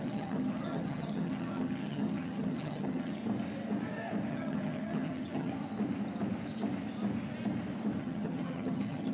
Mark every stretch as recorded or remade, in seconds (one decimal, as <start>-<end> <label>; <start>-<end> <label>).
0.0-3.2 remade; 3.2-4.3 recorded; 4.3-5.5 remade; 5.5-8.0 recorded; 8.0-9.1 remade